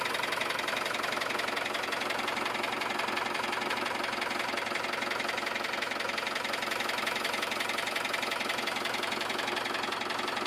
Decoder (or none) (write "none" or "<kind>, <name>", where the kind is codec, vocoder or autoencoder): none